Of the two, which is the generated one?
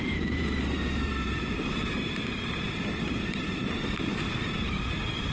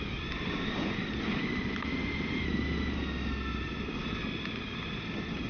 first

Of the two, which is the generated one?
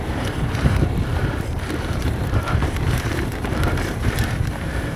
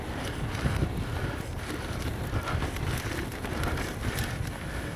first